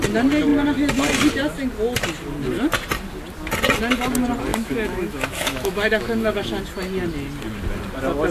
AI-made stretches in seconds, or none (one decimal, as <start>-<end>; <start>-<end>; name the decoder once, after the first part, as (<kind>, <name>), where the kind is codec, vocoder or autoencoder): 4.5-6.6 (autoencoder, DAC-VAE)